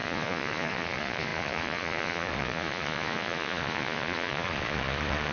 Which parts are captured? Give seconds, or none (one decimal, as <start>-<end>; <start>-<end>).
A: none